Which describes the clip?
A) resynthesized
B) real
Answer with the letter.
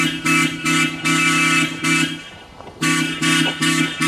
A